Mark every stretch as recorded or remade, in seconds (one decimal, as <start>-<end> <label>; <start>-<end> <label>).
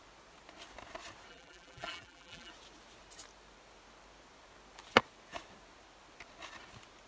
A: 0.0-1.3 recorded; 1.3-2.5 remade; 2.5-7.1 recorded